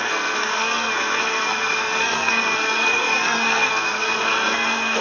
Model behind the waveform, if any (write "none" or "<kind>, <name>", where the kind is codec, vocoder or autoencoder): codec, SNAC